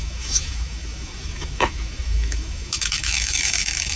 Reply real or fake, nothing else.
fake